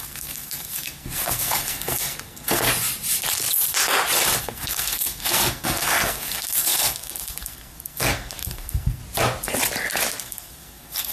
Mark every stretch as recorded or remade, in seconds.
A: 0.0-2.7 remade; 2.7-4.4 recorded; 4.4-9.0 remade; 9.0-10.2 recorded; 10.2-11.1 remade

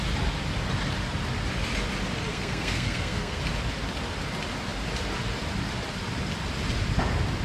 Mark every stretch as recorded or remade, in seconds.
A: 0.0-2.3 recorded; 2.3-3.4 remade; 3.4-7.4 recorded